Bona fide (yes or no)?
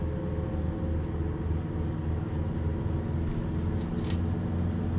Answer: yes